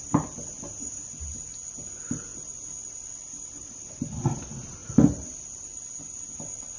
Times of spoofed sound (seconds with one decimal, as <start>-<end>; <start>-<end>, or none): none